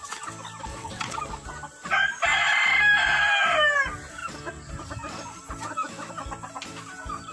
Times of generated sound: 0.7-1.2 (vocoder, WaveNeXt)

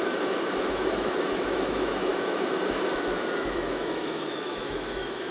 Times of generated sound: 0.0-5.3 (autoencoder, DAC-VAE)

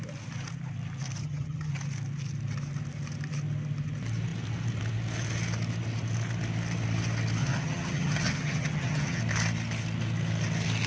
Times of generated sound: 1.2-1.7 (vocoder, HiFi-GAN); 7.4-9.2

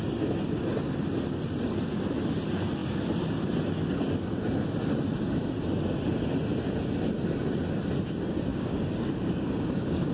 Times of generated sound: 8.5-10.1 (codec, DAC)

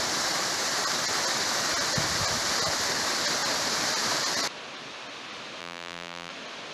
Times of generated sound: 5.6-6.3 (vocoder, BigVGAN v2)